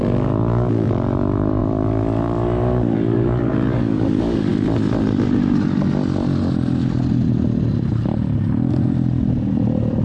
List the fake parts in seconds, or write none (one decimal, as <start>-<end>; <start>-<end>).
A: 0.0-4.5